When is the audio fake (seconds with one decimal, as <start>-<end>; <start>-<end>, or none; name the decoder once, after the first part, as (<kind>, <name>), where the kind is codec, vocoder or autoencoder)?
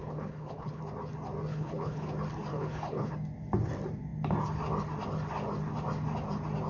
0.0-0.8 (codec, HILCodec); 1.5-2.1; 2.5-3.1